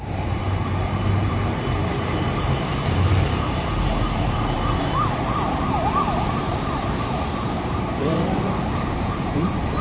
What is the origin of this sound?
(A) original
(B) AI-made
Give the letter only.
B